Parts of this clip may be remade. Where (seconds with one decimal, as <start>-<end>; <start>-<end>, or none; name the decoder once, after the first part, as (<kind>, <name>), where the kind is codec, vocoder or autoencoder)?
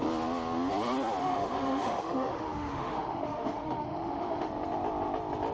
1.2-4.5 (autoencoder, DAC-VAE)